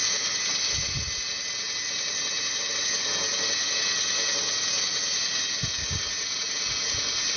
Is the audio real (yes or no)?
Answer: yes